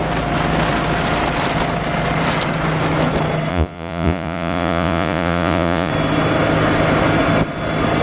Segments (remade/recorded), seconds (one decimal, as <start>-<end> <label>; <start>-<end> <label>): 0.0-3.5 recorded; 3.5-5.9 remade; 5.9-8.0 recorded